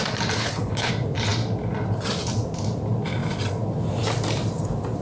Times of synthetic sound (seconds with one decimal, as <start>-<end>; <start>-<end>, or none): 0.4-0.9